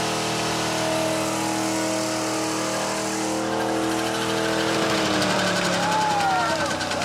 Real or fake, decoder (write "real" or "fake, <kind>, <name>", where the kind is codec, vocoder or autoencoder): fake, vocoder, BigVGAN v2